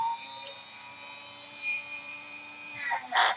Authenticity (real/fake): fake